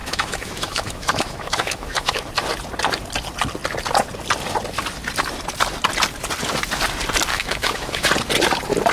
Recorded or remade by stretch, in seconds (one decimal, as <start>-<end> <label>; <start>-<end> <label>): 0.0-2.3 remade; 2.3-7.3 recorded; 7.3-8.1 remade; 8.1-8.9 recorded